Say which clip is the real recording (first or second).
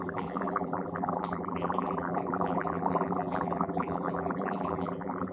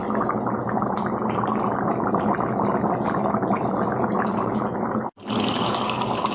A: second